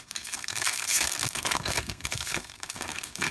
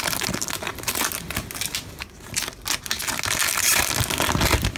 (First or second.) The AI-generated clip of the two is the first